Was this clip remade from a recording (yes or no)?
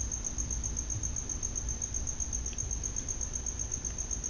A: no